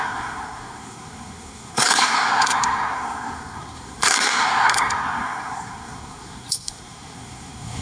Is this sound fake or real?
fake